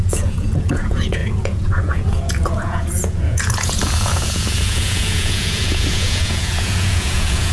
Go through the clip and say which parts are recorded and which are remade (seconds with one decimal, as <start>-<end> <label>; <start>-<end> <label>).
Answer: 0.0-7.5 remade